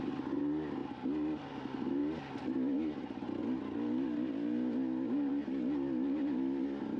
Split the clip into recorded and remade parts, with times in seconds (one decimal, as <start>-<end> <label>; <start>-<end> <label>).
0.0-7.0 recorded